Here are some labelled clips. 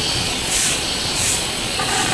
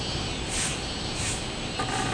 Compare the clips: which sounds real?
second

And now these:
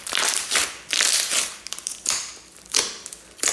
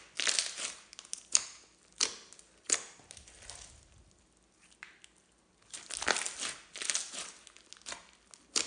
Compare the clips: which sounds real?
second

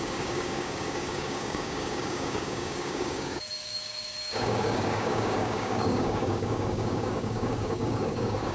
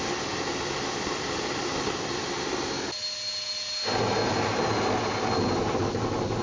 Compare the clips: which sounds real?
second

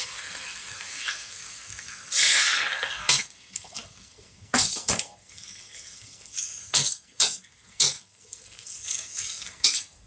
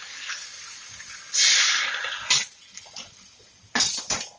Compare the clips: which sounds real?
second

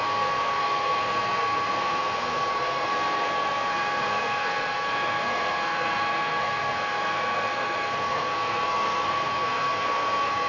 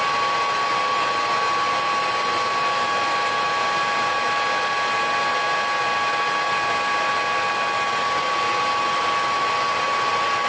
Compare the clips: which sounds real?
second